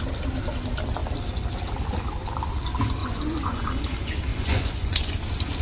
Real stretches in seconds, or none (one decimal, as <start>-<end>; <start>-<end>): 0.0-3.0; 3.7-4.3; 5.1-5.6